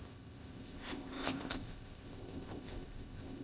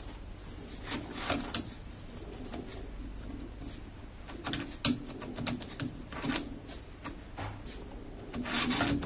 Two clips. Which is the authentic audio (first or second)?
second